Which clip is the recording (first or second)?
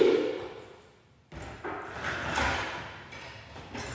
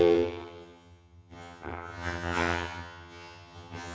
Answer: first